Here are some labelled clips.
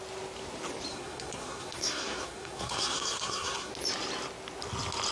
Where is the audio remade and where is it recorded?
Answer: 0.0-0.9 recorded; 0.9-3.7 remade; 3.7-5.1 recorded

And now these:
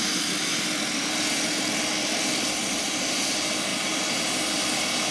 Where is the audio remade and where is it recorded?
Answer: 0.0-5.1 recorded

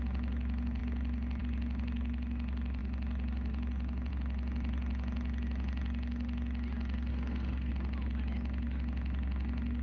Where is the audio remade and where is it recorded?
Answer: 0.0-7.1 recorded; 7.1-7.7 remade; 7.7-9.8 recorded

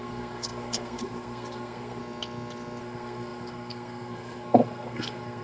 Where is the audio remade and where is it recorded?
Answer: 0.0-2.0 remade; 2.0-2.8 recorded; 2.8-5.4 remade

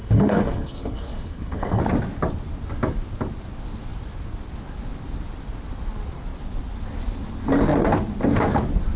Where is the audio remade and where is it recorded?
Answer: 0.0-1.8 remade; 1.8-9.0 recorded

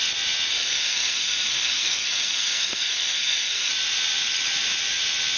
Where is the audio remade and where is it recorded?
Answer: 0.0-0.5 recorded; 0.5-3.7 remade; 3.7-5.4 recorded

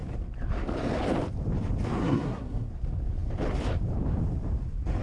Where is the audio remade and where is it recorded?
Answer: 0.0-2.0 recorded; 2.0-2.7 remade; 2.7-5.0 recorded